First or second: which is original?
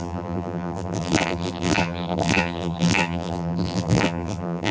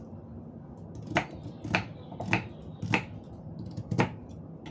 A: second